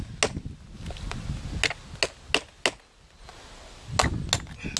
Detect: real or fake real